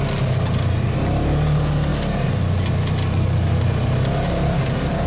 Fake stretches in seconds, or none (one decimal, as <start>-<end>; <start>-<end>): none